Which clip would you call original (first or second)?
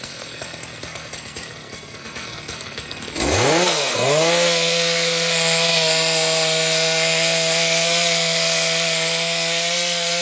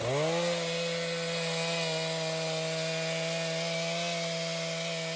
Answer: second